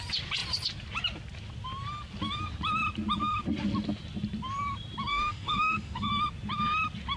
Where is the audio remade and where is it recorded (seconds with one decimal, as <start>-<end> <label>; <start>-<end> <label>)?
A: 0.0-5.1 recorded; 5.1-6.1 remade; 6.1-7.2 recorded